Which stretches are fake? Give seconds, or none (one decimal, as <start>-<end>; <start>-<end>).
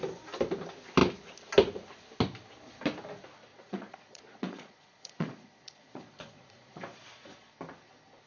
3.5-7.5